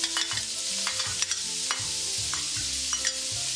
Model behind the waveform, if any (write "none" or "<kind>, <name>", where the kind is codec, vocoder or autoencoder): none